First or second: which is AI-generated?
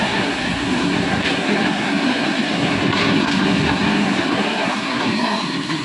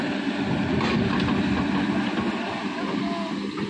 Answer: first